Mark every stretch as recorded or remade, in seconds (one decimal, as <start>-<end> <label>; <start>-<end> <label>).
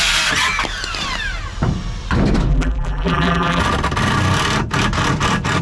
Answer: 0.0-2.5 recorded; 2.5-3.6 remade; 3.6-5.6 recorded